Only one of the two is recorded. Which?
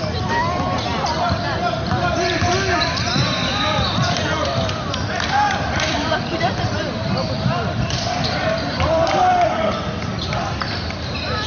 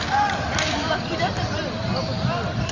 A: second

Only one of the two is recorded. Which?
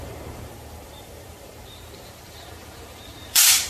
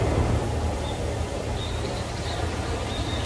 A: second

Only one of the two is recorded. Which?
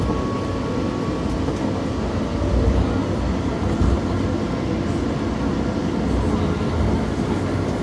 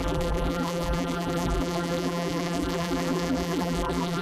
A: first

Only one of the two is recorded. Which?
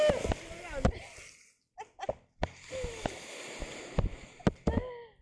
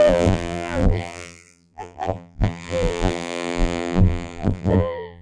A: first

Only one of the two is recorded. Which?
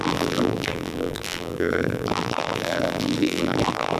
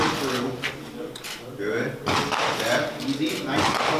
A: second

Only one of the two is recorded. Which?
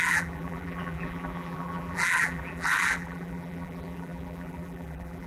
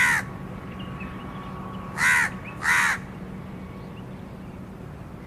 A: second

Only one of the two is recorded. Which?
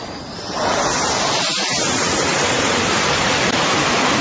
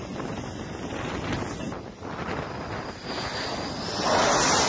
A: second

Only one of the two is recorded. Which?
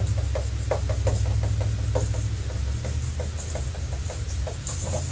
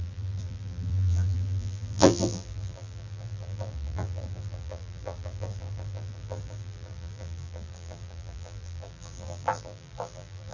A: first